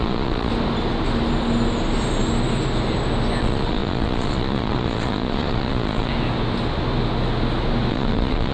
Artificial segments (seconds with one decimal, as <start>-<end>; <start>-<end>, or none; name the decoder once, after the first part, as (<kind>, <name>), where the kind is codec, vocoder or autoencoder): 0.0-0.5 (vocoder, Vocos); 3.4-6.1; 7.9-8.5